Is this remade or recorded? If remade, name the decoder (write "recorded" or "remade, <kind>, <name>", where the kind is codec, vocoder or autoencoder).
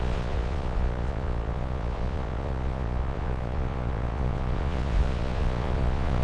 remade, vocoder, Vocos